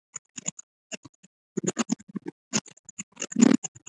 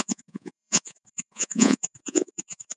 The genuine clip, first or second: first